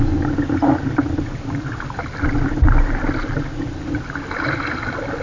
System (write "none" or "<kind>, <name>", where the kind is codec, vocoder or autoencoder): none